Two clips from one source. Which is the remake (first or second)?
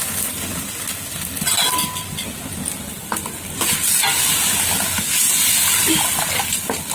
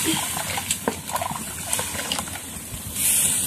second